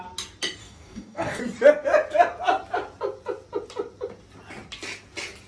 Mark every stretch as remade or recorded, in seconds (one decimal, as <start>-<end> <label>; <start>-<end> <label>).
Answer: 0.0-0.6 recorded; 0.6-1.4 remade; 1.4-5.5 recorded